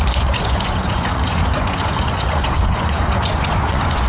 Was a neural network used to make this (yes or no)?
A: yes